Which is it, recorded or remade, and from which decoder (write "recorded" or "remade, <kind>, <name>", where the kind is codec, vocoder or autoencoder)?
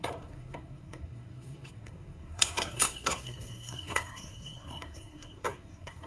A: remade, codec, SNAC